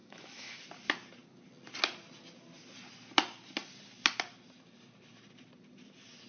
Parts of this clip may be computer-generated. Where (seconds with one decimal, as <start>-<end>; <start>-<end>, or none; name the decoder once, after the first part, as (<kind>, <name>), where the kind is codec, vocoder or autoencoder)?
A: 0.0-0.6 (autoencoder, DAC-VAE)